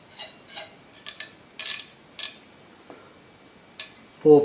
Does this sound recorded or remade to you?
recorded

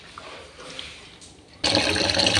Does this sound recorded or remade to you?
recorded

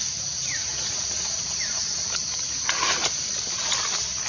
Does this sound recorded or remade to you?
recorded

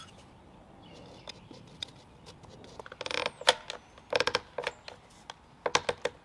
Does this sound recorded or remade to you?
recorded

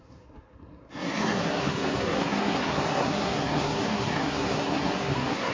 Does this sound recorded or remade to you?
remade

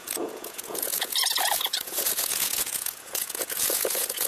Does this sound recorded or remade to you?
remade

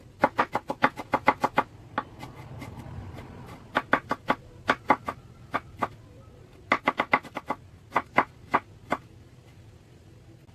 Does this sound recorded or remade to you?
recorded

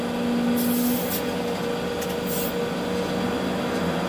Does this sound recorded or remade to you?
recorded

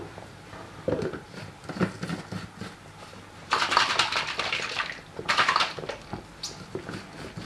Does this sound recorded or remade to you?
recorded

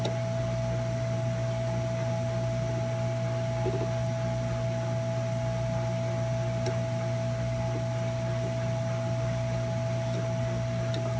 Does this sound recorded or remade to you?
recorded